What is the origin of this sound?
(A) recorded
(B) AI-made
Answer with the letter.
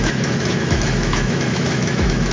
B